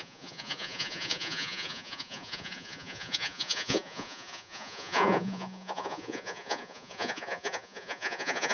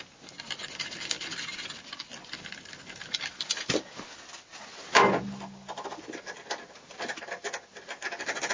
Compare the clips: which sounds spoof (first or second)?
first